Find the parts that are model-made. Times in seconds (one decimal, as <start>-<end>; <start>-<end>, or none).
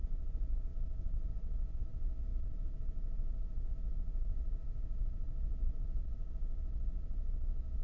none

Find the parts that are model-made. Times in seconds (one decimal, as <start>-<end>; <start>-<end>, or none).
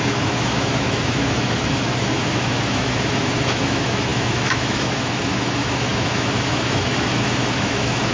0.0-8.1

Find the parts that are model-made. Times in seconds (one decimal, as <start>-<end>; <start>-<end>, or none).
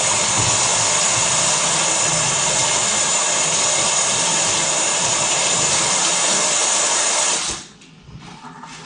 none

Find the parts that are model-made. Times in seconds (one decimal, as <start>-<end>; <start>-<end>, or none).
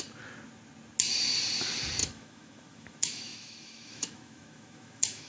2.0-5.3